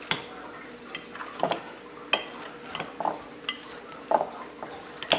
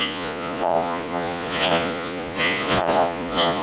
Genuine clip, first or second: first